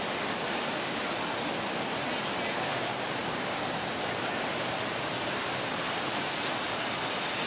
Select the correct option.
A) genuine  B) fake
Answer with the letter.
A